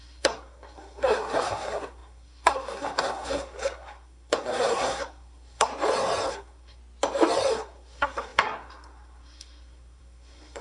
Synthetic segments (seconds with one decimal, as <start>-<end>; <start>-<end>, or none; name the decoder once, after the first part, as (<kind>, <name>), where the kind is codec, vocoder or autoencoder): 0.0-5.7 (codec, SNAC); 6.3-6.8; 7.5-10.6